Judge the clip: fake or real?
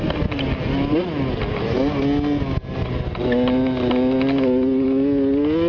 real